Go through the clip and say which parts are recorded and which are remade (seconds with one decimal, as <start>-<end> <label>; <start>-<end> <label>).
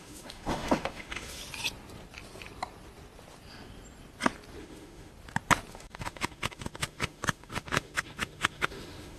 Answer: 0.0-1.4 remade; 1.4-4.6 recorded; 4.6-5.1 remade; 5.1-5.7 recorded; 5.7-9.2 remade